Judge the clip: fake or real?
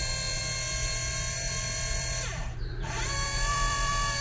fake